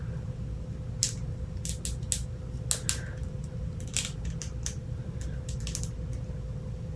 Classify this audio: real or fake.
real